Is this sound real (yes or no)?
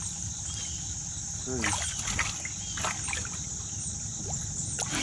yes